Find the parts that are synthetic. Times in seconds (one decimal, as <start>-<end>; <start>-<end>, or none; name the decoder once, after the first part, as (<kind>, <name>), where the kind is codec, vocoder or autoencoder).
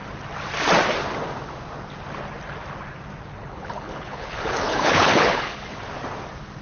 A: 3.4-5.8 (codec, HILCodec)